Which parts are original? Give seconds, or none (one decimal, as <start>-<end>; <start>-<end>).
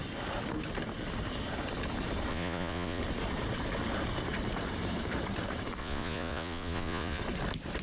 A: 0.0-2.3; 3.0-5.8; 7.2-7.8